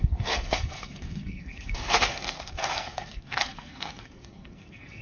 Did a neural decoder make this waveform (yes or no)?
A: yes